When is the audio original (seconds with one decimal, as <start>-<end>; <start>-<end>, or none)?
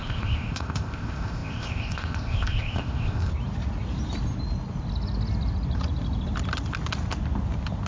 3.3-7.9